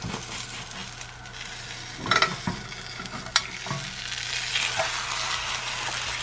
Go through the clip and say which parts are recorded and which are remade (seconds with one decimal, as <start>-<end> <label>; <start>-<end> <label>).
0.0-6.2 recorded